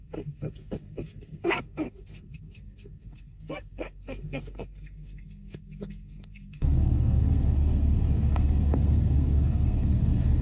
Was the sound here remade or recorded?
remade